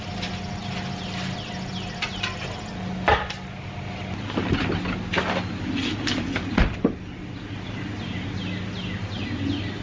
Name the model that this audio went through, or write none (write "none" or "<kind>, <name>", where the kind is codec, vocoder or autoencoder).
none